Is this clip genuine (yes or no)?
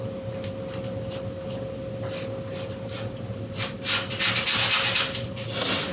yes